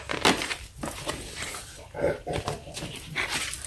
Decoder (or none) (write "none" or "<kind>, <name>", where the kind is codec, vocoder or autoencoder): none